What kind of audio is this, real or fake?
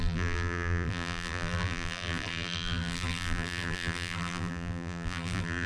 fake